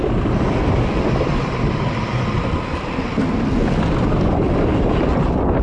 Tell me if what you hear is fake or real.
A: real